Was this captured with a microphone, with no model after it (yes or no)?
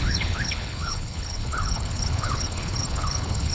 no